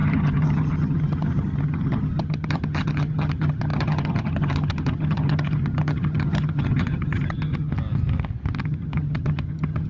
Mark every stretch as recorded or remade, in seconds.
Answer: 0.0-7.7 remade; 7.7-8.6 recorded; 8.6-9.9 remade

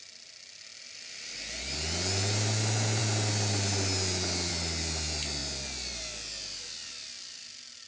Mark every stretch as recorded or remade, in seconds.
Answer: 0.0-7.9 recorded

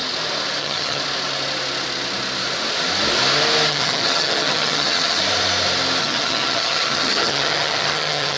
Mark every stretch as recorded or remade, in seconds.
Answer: 0.0-0.6 recorded; 0.6-1.0 remade; 1.0-3.7 recorded; 3.7-5.2 remade; 5.2-6.0 recorded; 6.0-8.4 remade